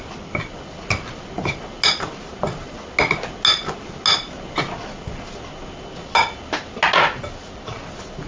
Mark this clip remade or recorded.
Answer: recorded